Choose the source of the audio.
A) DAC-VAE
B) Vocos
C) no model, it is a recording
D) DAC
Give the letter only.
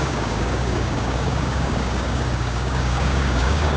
D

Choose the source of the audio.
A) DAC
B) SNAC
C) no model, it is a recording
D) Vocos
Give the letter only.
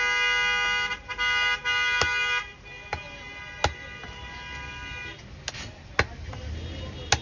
C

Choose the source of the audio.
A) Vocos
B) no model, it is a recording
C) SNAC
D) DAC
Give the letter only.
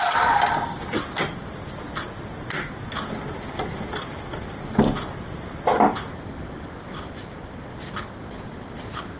B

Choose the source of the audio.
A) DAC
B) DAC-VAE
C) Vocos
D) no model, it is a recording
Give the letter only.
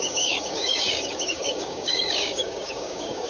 A